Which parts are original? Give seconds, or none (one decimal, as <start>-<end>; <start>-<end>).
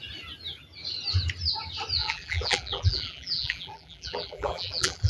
0.0-2.0